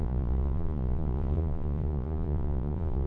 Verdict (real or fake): fake